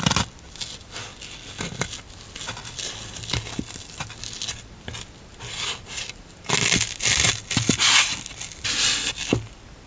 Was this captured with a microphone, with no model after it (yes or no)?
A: yes